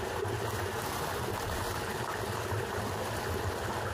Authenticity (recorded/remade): recorded